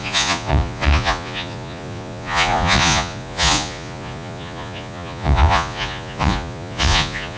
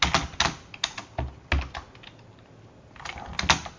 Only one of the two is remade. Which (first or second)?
first